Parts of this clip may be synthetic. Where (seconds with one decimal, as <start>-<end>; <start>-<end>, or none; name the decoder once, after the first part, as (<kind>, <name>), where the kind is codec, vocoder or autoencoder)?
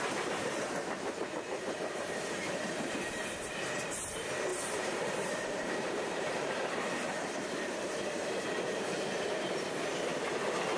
0.0-10.1 (vocoder, BigVGAN v2)